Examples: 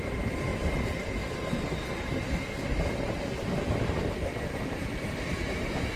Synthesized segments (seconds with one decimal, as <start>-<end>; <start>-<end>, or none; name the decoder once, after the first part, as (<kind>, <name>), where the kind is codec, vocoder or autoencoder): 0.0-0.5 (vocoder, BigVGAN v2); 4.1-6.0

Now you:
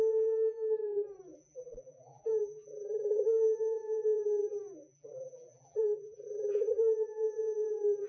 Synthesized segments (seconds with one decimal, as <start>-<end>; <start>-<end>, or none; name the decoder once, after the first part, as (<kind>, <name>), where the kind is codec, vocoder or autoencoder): 0.0-8.1 (vocoder, BigVGAN v2)

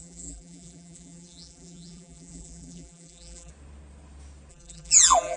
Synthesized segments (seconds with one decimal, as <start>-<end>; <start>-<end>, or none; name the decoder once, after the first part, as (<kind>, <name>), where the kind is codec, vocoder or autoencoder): 0.0-3.5 (vocoder, BigVGAN v2); 4.5-5.4

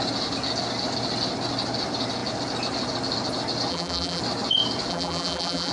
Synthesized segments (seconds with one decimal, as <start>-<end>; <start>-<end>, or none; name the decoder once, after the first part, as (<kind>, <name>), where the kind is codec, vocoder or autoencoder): 3.7-4.2 (vocoder, BigVGAN v2); 4.9-5.7

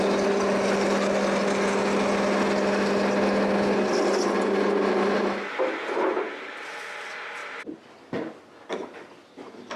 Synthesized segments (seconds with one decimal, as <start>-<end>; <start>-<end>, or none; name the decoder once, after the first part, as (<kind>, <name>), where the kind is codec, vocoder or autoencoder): none

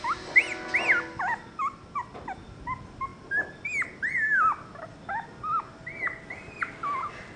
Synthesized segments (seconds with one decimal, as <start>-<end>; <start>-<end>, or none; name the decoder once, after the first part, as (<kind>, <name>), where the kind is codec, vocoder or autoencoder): none

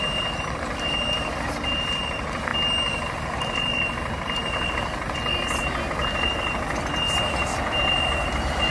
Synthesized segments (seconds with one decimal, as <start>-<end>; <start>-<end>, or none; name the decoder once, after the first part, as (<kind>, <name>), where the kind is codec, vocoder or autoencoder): 0.0-2.5 (vocoder, BigVGAN v2); 7.7-8.7

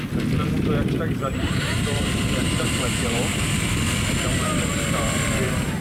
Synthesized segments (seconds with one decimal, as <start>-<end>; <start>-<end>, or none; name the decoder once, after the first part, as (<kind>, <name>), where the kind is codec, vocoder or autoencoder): 1.2-3.8 (vocoder, BigVGAN v2); 4.3-5.8